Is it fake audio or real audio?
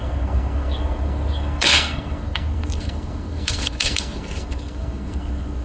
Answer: fake